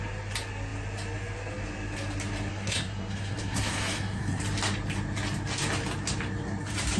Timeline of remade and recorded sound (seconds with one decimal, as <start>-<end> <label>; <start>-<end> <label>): 0.0-2.5 recorded; 2.5-4.4 remade; 4.4-7.0 recorded